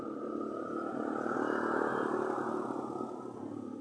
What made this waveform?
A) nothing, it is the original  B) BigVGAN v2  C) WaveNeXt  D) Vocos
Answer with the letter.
A